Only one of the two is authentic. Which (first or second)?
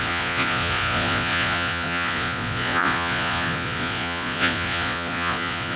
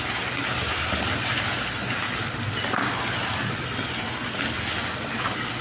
second